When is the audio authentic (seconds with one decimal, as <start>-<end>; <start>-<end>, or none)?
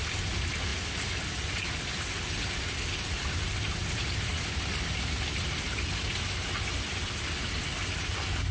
0.0-8.5